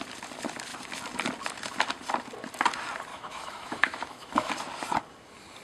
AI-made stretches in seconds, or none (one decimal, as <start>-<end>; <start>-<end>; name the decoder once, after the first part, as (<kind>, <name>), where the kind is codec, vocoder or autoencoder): 3.1-4.5 (autoencoder, DAC-VAE)